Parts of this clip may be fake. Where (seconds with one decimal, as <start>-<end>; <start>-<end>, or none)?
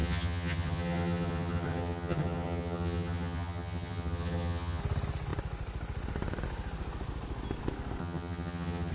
0.0-4.8; 8.0-8.9